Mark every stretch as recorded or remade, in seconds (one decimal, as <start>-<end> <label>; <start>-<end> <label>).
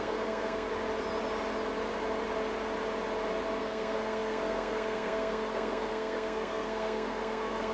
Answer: 0.0-0.7 remade; 0.7-3.6 recorded; 3.6-7.7 remade